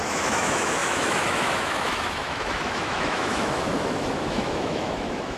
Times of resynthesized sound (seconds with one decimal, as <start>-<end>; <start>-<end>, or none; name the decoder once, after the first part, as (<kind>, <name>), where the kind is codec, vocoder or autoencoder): 0.0-5.4 (autoencoder, DAC-VAE)